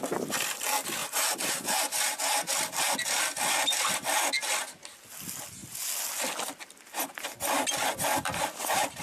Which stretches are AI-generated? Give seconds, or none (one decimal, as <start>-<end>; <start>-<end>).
1.0-2.5; 8.1-9.0